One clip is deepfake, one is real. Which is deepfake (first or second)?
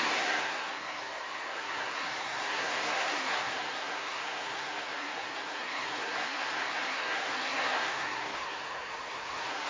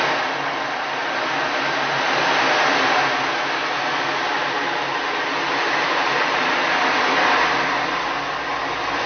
first